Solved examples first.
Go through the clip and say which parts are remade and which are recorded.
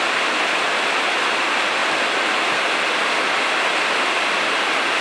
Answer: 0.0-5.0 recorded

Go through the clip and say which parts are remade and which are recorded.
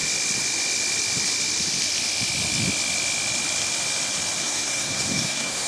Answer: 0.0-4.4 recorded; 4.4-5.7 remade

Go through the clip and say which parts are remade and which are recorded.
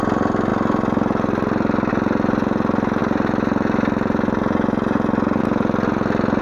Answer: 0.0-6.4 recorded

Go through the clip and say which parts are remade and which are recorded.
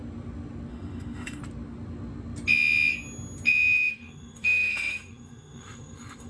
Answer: 0.0-0.7 recorded; 0.7-1.4 remade; 1.4-3.9 recorded; 3.9-6.3 remade